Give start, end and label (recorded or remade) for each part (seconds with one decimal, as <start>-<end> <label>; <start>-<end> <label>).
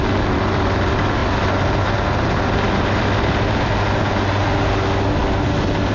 0.0-5.9 recorded